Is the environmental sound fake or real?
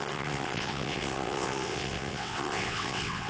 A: fake